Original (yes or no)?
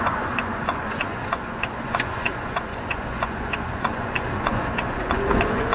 no